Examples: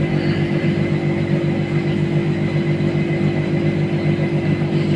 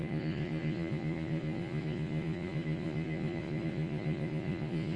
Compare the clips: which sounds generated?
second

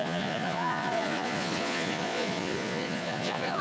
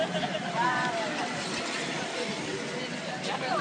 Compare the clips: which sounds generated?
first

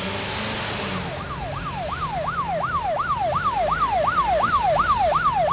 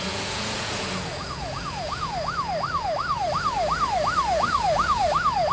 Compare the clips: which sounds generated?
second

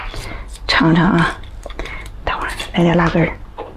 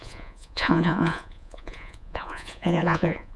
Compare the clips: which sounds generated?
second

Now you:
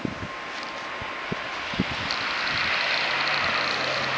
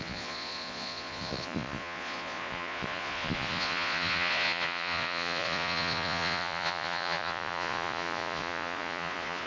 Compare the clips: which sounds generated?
second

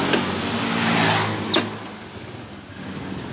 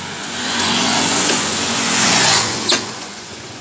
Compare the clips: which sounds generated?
second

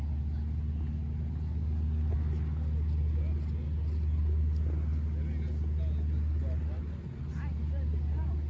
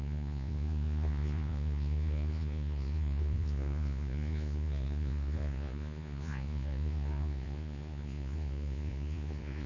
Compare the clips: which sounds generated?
second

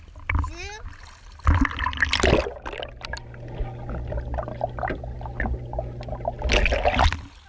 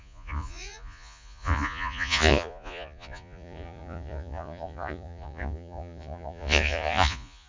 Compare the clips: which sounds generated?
second